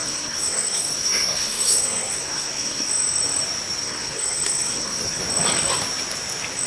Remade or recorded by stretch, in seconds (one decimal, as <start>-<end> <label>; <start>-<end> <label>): 0.0-2.9 remade; 2.9-3.8 recorded; 3.8-5.2 remade; 5.2-6.7 recorded